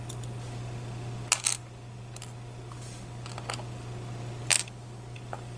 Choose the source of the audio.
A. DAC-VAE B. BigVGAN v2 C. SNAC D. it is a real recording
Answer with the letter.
D